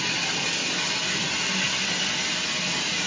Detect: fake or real real